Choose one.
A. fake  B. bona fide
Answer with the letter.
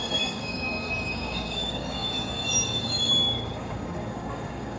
A